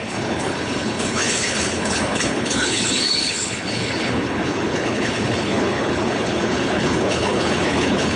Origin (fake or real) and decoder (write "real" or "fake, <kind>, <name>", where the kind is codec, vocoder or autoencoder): fake, codec, HILCodec